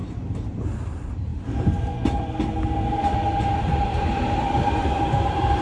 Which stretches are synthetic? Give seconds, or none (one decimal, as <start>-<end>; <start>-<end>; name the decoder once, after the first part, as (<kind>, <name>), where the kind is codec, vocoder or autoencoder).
0.0-1.3 (vocoder, BigVGAN v2); 3.0-5.6